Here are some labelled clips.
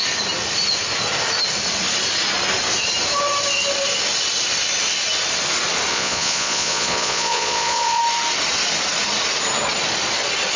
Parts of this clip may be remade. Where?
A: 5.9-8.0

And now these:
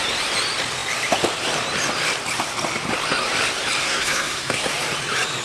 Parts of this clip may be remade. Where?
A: 3.8-4.7

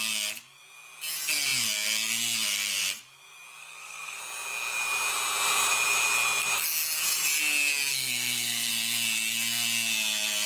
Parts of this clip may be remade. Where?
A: 3.6-4.2; 7.9-8.7

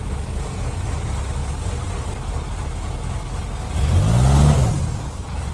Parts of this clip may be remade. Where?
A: none

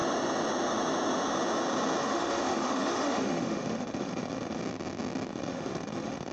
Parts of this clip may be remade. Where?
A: 2.0-4.6; 5.3-6.3

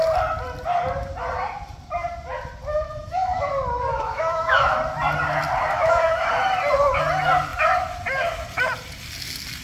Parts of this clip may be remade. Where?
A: 2.7-3.5; 3.9-4.8; 5.7-6.3